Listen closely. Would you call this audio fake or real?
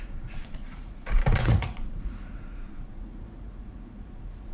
fake